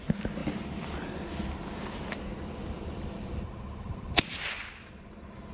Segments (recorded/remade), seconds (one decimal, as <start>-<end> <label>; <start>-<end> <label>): 0.0-0.4 recorded; 0.4-1.3 remade; 1.3-2.6 recorded; 2.6-4.2 remade; 4.2-5.5 recorded